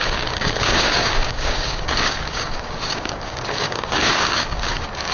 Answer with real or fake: fake